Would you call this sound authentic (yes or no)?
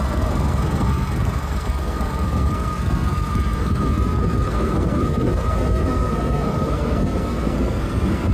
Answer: no